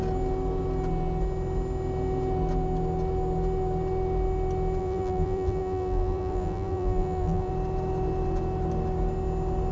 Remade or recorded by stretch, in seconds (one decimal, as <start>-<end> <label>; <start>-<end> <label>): 0.0-4.8 recorded; 4.8-7.5 remade; 7.5-9.7 recorded